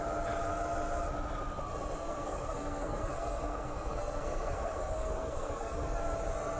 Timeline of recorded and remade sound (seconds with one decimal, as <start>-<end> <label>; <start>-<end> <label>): 0.0-2.0 recorded; 2.0-6.0 remade; 6.0-6.6 recorded